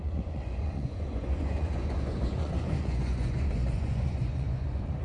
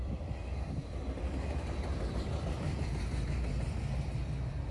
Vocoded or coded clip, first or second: first